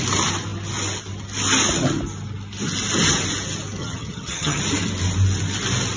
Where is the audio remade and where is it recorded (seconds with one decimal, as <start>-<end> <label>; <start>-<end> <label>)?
0.0-3.8 recorded; 3.8-4.6 remade; 4.6-6.0 recorded